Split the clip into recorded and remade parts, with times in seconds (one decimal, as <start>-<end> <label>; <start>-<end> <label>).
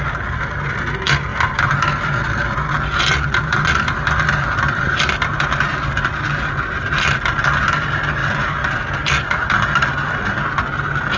0.0-1.3 recorded; 1.3-5.2 remade; 5.2-8.2 recorded; 8.2-10.4 remade; 10.4-11.2 recorded